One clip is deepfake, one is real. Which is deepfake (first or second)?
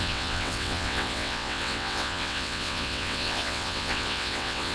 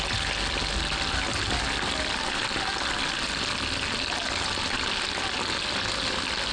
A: first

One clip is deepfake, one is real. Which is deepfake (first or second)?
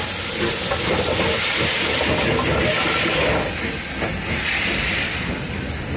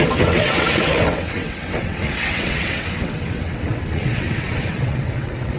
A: second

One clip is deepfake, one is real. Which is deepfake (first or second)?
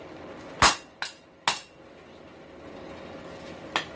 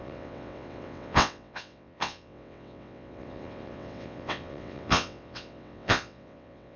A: second